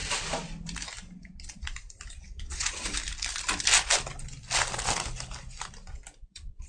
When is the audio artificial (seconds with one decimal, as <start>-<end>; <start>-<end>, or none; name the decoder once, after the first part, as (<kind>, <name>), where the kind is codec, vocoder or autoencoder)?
2.1-2.9 (vocoder, Vocos); 6.3-6.7